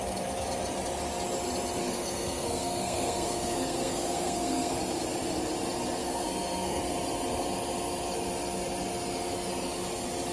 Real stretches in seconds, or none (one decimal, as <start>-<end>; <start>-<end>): 0.0-1.8; 4.7-6.0; 6.8-10.3

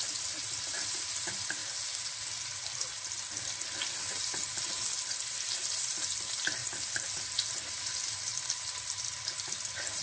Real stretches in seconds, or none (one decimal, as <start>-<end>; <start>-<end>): 1.6-5.5; 6.6-7.5

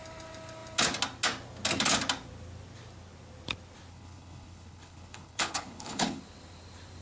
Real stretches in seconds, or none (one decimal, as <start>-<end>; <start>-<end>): 0.0-3.9; 6.2-7.0

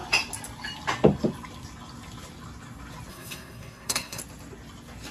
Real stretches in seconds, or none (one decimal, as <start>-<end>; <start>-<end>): 0.0-3.1; 4.2-5.1

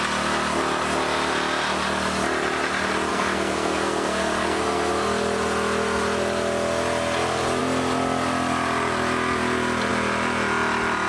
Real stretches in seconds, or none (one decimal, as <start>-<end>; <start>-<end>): 0.0-3.1; 4.9-11.1

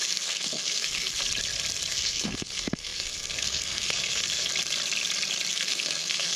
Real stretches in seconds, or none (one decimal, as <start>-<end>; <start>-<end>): 1.2-1.9; 4.5-5.5